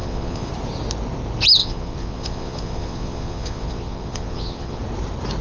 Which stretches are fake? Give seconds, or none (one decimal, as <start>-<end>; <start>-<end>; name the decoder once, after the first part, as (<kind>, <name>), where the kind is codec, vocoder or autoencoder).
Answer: 0.0-0.5 (vocoder, Vocos); 1.6-4.8